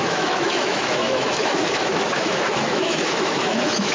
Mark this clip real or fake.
fake